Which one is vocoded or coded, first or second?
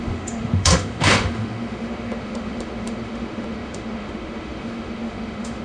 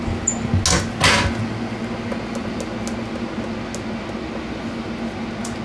first